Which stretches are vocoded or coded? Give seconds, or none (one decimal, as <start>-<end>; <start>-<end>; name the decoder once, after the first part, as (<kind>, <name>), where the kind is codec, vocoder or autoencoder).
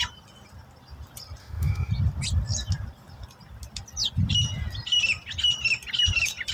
1.4-1.9 (autoencoder, DAC-VAE)